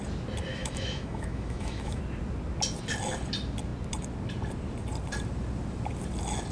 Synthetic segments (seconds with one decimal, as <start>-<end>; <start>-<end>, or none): 0.5-2.0

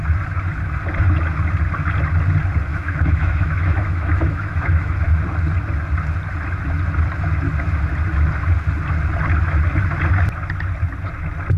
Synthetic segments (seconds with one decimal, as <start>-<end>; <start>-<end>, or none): 2.7-5.0

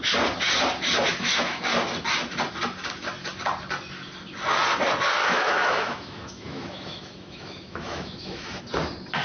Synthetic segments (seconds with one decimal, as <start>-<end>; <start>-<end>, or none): 1.1-1.6; 5.2-8.6

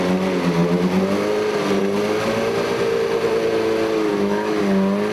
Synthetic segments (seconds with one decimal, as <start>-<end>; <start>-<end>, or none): 4.1-4.6